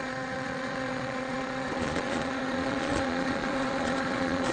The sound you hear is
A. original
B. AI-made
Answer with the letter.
B